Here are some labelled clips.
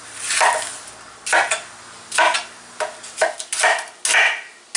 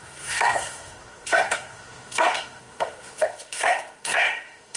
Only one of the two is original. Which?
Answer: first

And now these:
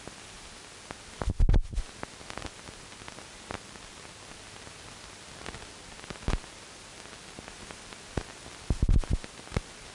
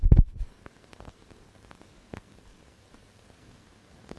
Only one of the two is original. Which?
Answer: first